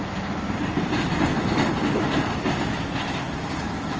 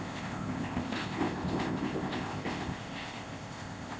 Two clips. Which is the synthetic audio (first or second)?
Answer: second